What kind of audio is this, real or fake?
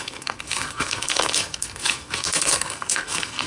fake